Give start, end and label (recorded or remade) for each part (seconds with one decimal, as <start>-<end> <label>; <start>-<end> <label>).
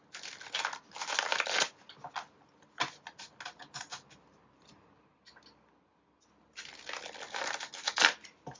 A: 0.0-8.6 recorded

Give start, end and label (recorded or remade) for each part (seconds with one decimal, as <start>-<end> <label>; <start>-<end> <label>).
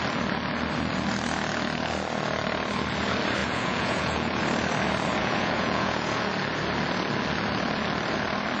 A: 0.0-3.4 recorded; 3.4-4.4 remade; 4.4-5.2 recorded; 5.2-6.3 remade; 6.3-8.6 recorded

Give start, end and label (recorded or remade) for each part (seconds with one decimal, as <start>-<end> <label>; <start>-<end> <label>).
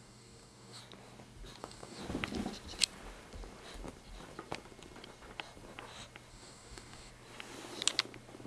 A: 0.0-0.8 remade; 0.8-1.6 recorded; 1.6-2.0 remade; 2.0-6.3 recorded; 6.3-7.1 remade; 7.1-8.5 recorded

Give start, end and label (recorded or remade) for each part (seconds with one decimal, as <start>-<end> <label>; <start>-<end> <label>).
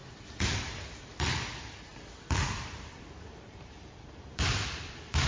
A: 0.0-0.7 remade; 0.7-1.9 recorded; 1.9-5.3 remade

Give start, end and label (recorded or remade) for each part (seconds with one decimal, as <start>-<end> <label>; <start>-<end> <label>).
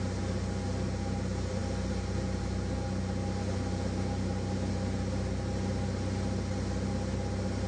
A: 0.0-7.7 recorded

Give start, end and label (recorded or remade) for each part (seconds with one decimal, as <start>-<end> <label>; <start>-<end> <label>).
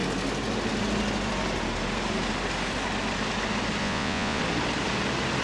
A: 0.0-3.8 recorded; 3.8-4.4 remade; 4.4-5.4 recorded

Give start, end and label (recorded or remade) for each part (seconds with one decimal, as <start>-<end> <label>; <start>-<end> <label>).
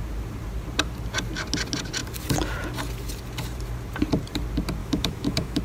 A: 0.0-4.8 recorded; 4.8-5.6 remade